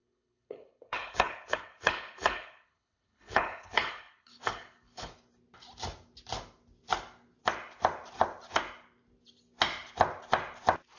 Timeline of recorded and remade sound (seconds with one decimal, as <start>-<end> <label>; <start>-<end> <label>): 0.0-5.1 remade; 5.1-11.0 recorded